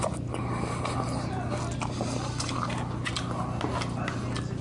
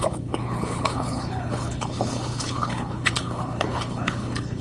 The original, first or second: first